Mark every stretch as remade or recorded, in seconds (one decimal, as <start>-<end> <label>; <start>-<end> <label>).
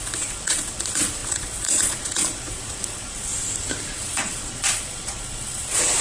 0.0-3.3 remade; 3.3-3.9 recorded; 3.9-6.0 remade